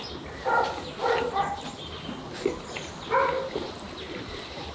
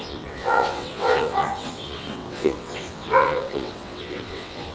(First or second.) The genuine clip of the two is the first